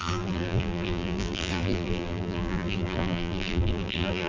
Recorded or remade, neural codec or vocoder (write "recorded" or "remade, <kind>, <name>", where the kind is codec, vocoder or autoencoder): remade, vocoder, BigVGAN v2